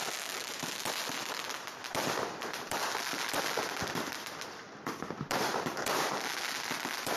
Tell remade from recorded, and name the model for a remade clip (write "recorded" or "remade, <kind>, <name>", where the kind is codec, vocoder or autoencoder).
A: recorded